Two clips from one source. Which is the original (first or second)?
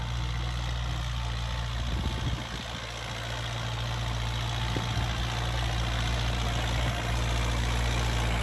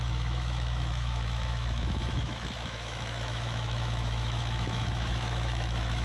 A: first